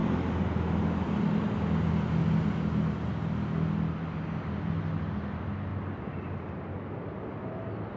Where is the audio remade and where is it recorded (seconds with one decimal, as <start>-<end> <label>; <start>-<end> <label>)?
0.0-1.4 remade; 1.4-5.7 recorded; 5.7-6.9 remade; 6.9-8.0 recorded